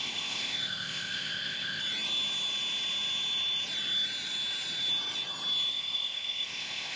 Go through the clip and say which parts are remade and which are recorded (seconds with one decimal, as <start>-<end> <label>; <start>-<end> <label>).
0.0-1.8 remade; 1.8-5.7 recorded; 5.7-7.0 remade